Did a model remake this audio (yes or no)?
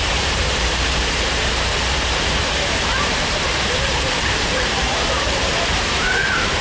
yes